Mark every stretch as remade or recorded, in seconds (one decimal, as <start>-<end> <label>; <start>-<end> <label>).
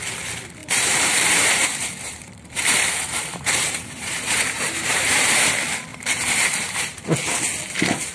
0.0-0.6 recorded; 0.6-5.4 remade; 5.4-5.9 recorded; 5.9-7.0 remade; 7.0-8.1 recorded